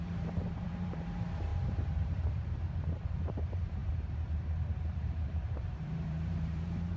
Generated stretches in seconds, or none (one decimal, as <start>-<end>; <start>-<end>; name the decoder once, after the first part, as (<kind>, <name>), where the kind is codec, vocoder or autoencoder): 0.0-7.0 (vocoder, BigVGAN v2)